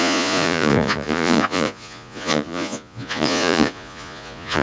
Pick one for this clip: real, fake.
fake